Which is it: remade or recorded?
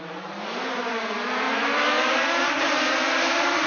remade